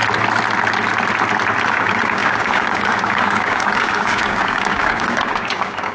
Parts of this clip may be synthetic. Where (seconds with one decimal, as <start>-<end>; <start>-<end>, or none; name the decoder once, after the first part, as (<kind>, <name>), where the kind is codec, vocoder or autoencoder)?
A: 1.7-5.9 (codec, DAC)